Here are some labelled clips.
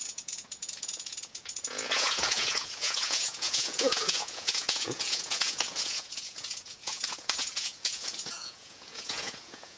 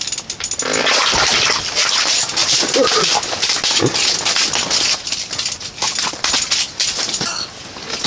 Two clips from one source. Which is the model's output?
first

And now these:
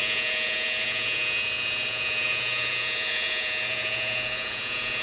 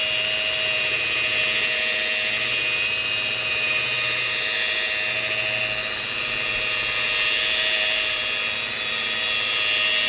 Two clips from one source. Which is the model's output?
first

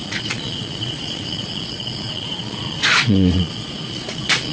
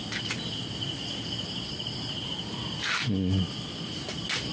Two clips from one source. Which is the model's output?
first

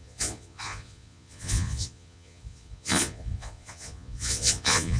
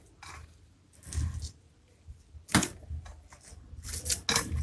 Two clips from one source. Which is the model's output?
first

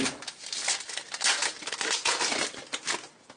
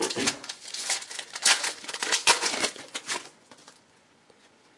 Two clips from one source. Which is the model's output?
second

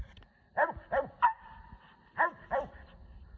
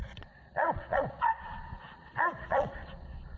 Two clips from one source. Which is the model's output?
second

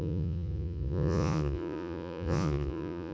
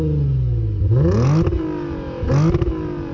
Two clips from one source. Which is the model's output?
first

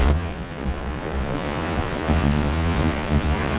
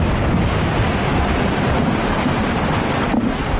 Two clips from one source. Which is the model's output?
first